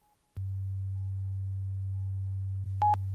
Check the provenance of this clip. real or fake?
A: real